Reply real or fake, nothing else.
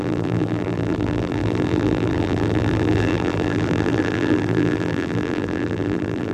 fake